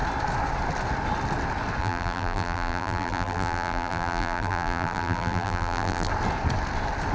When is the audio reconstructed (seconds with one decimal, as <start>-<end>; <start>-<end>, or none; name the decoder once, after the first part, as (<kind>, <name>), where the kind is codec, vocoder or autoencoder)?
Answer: 1.8-6.1 (vocoder, BigVGAN v2)

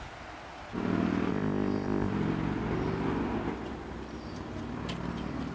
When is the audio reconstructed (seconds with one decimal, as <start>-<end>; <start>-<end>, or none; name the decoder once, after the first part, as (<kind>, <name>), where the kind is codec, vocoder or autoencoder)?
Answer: 1.3-2.1 (codec, ZipCodec)

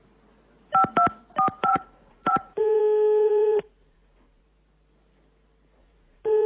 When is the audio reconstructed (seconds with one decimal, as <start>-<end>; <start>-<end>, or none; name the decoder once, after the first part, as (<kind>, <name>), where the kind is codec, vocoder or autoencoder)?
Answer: 1.6-2.8 (vocoder, Vocos); 3.2-4.4; 5.8-6.5

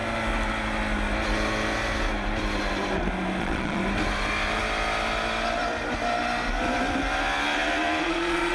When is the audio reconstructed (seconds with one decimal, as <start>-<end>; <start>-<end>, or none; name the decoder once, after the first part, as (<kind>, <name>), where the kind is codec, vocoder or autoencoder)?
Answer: 3.4-3.8 (vocoder, Vocos); 8.0-8.5

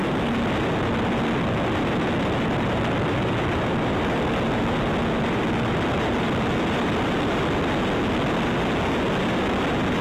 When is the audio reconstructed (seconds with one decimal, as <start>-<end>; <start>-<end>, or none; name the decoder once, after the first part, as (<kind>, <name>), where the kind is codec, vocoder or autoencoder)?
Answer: none

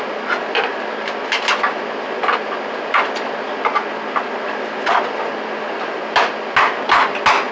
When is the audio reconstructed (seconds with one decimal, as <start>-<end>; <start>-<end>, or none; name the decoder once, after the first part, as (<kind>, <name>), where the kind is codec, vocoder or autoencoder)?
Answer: none